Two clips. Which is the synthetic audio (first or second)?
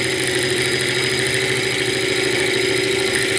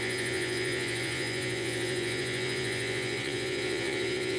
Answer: second